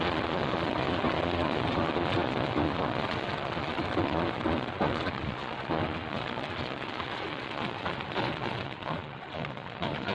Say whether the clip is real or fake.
fake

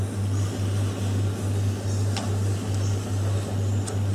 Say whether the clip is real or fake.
real